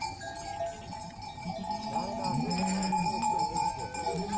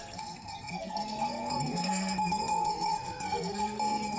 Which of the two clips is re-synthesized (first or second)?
second